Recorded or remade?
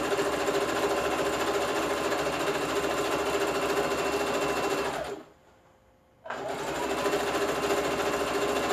recorded